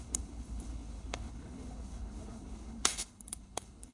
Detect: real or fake fake